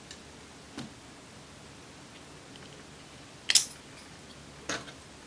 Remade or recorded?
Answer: recorded